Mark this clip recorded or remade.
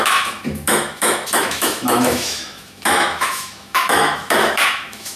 remade